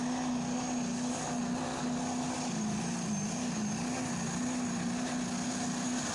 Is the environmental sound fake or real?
real